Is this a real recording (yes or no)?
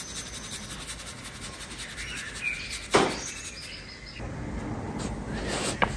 yes